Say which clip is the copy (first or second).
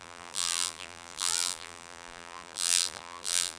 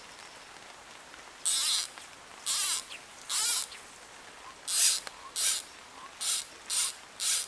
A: first